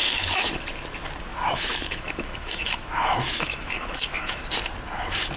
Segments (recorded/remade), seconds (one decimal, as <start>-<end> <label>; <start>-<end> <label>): 0.0-0.5 remade; 0.5-1.3 recorded; 1.3-4.4 remade; 4.4-5.4 recorded